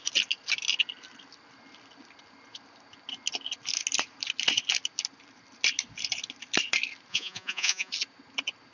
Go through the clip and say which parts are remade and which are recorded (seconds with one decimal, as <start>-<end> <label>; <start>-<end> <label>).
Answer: 0.0-7.1 recorded; 7.1-7.9 remade; 7.9-8.7 recorded